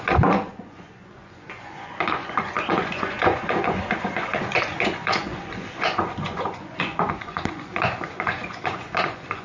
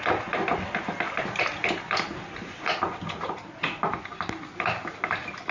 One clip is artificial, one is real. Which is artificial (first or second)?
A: first